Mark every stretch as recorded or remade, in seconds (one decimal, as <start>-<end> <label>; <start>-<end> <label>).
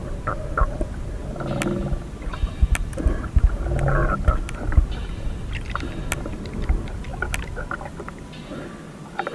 0.0-9.3 recorded